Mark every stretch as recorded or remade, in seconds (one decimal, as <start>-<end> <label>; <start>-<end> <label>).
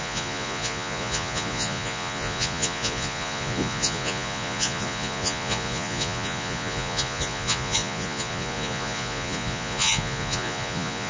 0.0-11.1 remade